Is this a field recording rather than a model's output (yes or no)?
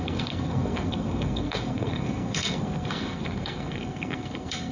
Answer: no